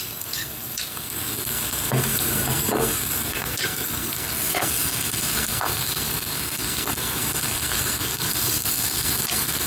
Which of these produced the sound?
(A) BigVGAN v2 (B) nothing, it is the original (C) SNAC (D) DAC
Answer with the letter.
C